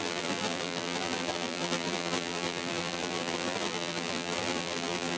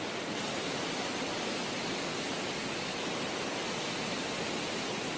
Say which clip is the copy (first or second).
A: first